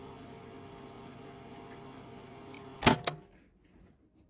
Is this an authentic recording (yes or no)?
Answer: yes